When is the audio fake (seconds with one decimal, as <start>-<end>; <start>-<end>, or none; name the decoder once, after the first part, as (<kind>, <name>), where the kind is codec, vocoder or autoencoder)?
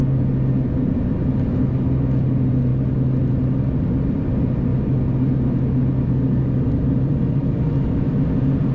none